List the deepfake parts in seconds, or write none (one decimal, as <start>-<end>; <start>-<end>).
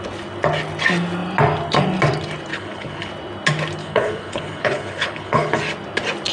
2.5-3.1; 3.8-5.6